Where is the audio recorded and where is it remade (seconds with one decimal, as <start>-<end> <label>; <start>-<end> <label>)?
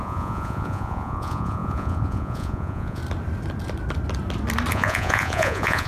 0.0-3.0 remade; 3.0-4.7 recorded; 4.7-5.9 remade